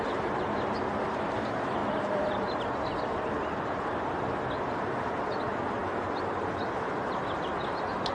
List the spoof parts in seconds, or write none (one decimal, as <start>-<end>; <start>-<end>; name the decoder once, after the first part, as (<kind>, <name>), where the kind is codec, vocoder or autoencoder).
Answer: 1.8-2.7 (vocoder, BigVGAN v2)